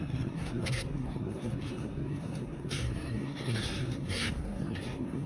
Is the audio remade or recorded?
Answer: remade